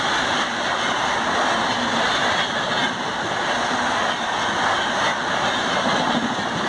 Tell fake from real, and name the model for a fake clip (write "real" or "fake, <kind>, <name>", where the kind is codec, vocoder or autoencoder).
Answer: real